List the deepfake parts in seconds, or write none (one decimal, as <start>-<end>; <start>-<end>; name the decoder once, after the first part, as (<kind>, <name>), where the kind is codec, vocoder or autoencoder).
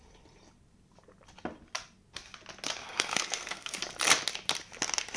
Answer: 2.8-3.8 (codec, SNAC)